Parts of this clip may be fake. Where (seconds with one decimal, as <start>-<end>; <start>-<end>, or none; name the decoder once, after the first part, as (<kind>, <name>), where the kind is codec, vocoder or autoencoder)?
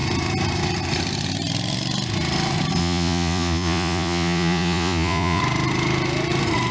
2.8-5.4 (vocoder, Vocos)